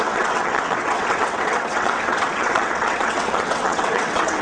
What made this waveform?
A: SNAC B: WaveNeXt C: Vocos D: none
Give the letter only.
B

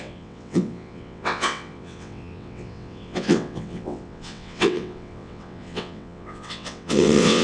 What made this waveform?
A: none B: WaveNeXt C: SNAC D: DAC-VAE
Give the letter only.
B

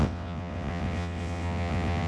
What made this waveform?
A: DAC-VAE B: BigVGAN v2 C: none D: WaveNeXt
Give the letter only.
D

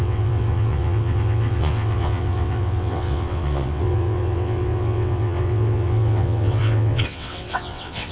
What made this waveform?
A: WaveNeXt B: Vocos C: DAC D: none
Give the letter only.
A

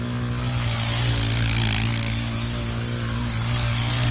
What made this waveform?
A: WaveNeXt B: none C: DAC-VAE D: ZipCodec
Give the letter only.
B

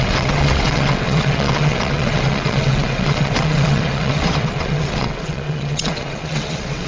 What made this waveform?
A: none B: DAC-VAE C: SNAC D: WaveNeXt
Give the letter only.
D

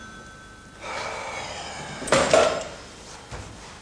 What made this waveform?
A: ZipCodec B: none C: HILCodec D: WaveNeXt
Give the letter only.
B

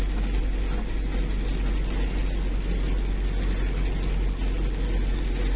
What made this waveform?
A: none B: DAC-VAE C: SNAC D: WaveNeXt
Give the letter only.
A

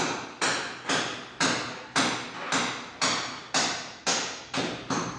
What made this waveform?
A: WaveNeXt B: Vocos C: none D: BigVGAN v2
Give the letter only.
C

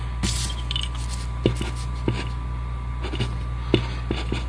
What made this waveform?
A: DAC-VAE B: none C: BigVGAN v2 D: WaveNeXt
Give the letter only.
B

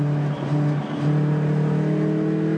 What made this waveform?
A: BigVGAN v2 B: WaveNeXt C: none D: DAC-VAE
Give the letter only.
C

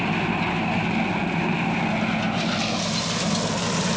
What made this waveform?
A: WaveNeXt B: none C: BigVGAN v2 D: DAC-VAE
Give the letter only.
B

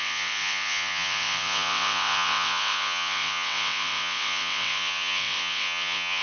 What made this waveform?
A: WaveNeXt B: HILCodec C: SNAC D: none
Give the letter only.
A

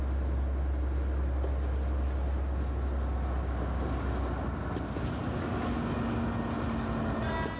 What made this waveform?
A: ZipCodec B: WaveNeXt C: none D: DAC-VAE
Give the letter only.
C